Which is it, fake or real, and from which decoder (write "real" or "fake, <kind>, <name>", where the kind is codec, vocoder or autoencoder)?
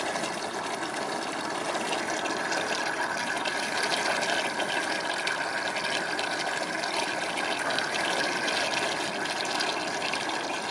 real